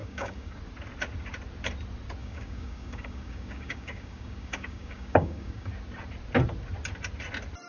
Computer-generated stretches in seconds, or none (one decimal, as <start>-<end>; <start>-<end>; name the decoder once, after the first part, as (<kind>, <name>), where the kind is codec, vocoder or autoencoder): 0.0-0.6 (codec, DAC); 2.2-5.7

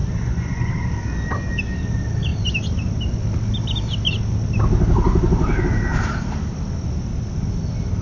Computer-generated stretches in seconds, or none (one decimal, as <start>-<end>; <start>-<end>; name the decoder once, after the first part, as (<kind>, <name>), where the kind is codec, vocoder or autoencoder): 0.0-0.7 (vocoder, Vocos)